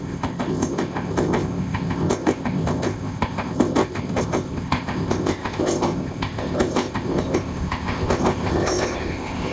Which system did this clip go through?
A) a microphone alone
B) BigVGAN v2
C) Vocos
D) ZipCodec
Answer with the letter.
D